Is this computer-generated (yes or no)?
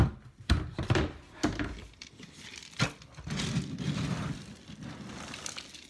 no